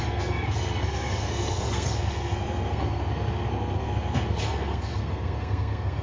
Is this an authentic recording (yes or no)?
no